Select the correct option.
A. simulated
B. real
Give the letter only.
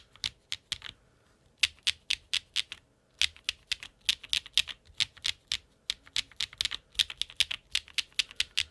B